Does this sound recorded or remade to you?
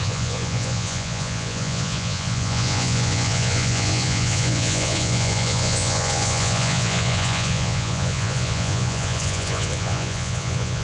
remade